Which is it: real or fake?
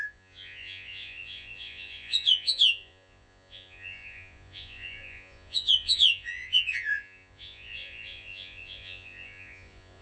fake